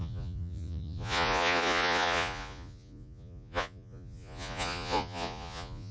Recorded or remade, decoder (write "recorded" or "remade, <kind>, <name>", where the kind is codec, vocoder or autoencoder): remade, vocoder, Vocos